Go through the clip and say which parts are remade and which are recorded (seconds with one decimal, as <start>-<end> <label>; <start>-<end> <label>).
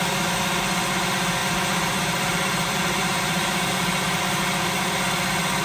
0.0-1.4 recorded; 1.4-4.4 remade; 4.4-5.6 recorded